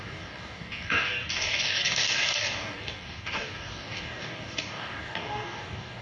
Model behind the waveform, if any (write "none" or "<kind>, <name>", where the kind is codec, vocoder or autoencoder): codec, DAC